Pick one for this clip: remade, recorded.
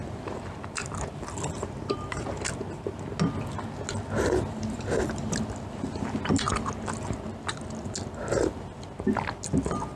recorded